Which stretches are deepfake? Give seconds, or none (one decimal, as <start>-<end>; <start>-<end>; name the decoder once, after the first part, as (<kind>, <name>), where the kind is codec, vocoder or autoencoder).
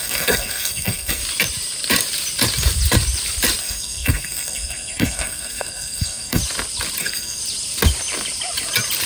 0.0-1.2 (codec, SNAC); 3.6-6.4; 7.0-7.4